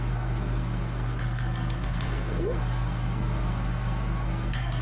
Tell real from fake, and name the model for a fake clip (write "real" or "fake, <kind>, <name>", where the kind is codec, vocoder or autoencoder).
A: fake, codec, SNAC